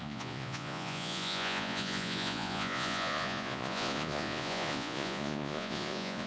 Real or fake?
fake